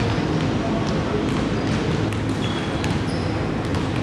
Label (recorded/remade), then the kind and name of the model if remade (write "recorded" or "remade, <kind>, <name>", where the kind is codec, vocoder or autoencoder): recorded